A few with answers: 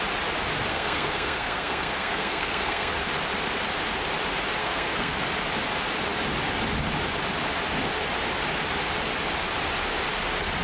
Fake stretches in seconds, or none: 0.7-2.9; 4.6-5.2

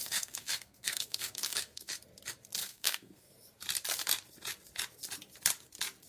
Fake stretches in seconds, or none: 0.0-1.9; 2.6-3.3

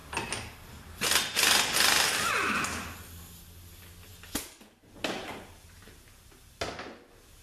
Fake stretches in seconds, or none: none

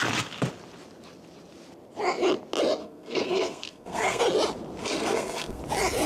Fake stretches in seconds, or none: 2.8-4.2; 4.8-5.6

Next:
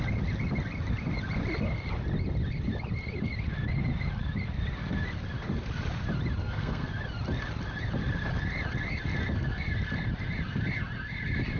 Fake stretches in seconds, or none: 6.4-6.9

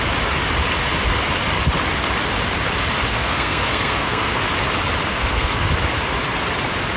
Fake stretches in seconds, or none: 3.1-4.4; 5.1-5.7

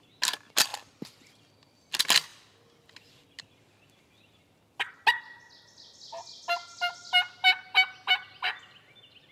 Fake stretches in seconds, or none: none

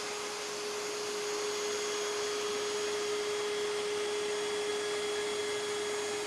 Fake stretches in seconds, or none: none